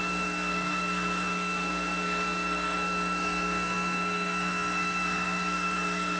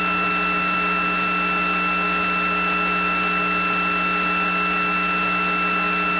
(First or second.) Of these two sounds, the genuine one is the second